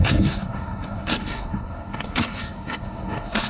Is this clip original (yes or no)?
no